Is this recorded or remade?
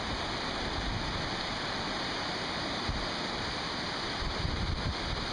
recorded